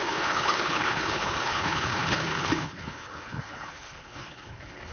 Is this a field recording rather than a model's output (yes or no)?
no